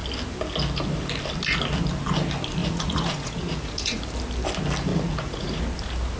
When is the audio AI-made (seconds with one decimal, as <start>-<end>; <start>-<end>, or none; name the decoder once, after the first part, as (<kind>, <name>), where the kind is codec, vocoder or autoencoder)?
2.6-4.0 (vocoder, Vocos); 4.9-5.6